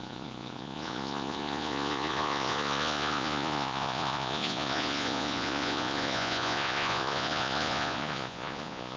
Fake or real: fake